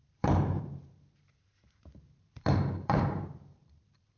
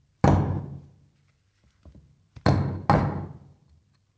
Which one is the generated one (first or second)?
first